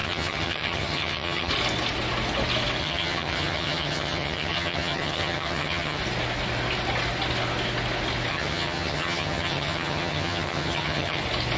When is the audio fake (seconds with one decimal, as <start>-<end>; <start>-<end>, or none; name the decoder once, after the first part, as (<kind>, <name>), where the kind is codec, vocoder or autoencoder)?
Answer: 0.0-1.5 (vocoder, HiFi-GAN); 2.8-6.0; 8.3-11.2